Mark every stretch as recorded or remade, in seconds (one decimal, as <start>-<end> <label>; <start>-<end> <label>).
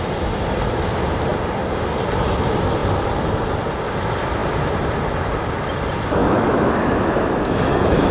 0.0-6.2 recorded; 6.2-8.1 remade